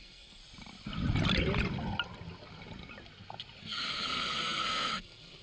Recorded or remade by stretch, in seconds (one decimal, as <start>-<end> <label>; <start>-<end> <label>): 0.0-0.4 remade; 0.4-3.6 recorded; 3.6-5.4 remade